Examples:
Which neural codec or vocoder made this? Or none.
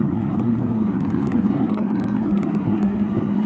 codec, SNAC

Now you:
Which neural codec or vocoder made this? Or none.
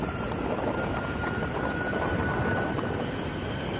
none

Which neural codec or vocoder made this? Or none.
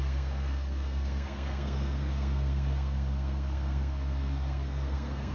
codec, SNAC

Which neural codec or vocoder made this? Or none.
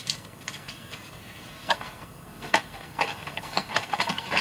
codec, SNAC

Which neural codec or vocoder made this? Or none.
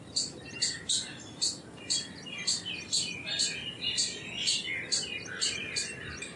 none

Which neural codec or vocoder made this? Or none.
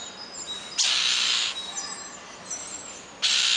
none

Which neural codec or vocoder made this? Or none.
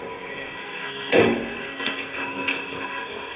codec, SNAC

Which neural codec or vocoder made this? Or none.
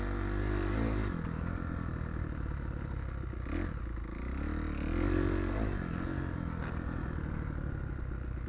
none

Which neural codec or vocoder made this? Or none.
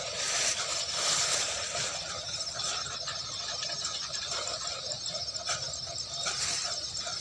none